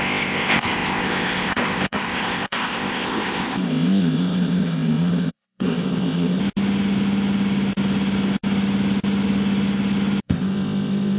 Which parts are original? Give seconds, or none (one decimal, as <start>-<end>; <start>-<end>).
6.4-10.2